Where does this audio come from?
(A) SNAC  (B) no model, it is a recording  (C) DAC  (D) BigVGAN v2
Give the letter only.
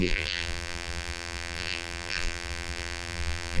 D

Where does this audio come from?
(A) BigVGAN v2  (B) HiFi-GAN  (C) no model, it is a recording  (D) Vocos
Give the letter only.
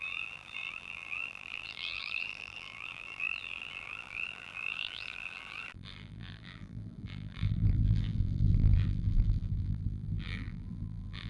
A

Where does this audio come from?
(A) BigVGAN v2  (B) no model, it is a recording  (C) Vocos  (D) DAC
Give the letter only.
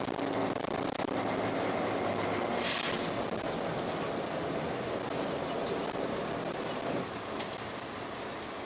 B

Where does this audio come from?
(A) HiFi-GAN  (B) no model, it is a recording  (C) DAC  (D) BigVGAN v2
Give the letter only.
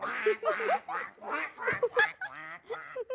B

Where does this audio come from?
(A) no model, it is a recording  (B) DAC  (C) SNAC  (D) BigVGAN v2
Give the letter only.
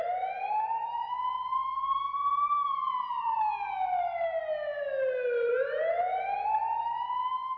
A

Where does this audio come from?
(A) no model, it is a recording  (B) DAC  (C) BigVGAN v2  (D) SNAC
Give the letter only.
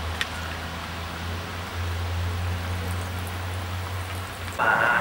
A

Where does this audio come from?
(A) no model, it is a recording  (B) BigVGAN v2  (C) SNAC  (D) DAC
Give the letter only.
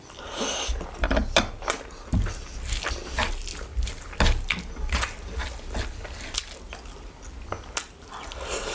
A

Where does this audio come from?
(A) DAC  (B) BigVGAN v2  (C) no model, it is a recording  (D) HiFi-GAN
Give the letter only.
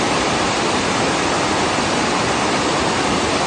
B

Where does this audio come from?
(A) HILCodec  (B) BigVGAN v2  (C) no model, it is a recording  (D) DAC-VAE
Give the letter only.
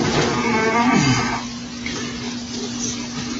C